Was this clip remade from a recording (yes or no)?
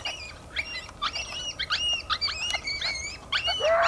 no